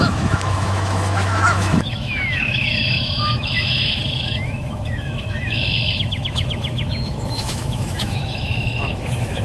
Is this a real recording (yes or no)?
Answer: no